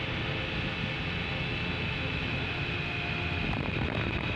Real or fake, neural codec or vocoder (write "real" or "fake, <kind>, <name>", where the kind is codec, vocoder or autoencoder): real